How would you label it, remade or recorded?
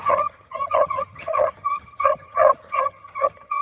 remade